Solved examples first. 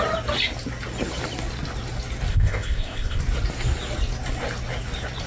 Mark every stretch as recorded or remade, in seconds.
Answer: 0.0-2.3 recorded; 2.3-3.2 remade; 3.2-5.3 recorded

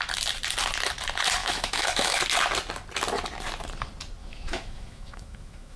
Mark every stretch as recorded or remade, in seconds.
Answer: 0.0-1.4 recorded; 1.4-2.2 remade; 2.2-4.2 recorded; 4.2-5.8 remade

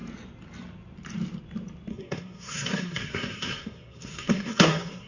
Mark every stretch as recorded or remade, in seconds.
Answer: 0.0-1.9 recorded; 1.9-5.1 remade

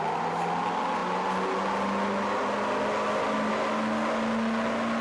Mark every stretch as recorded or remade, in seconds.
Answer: 0.0-5.0 recorded

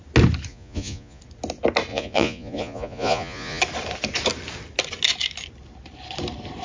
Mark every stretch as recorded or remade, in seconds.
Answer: 0.0-0.5 recorded; 0.5-1.2 remade; 1.2-1.9 recorded; 1.9-3.6 remade; 3.6-6.6 recorded

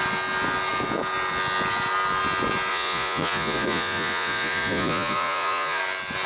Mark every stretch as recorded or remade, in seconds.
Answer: 0.0-2.7 recorded; 2.7-5.8 remade; 5.8-6.3 recorded